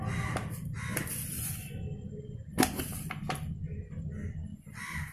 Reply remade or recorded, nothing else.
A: recorded